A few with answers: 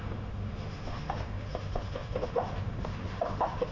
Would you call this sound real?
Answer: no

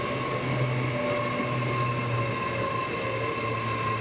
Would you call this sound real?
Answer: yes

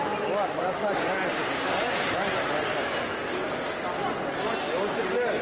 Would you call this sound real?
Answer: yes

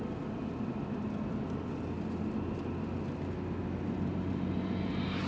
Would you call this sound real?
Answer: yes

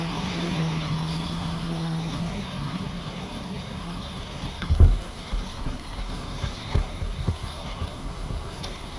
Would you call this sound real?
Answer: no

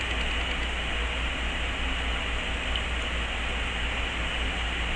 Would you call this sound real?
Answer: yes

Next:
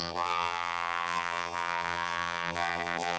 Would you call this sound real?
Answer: no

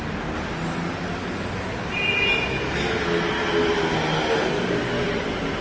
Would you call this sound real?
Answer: yes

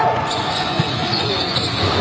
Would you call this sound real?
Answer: no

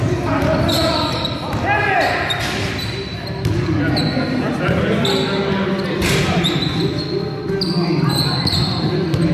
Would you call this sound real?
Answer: yes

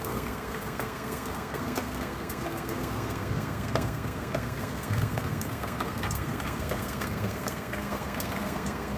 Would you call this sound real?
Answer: no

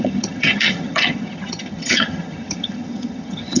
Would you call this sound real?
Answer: no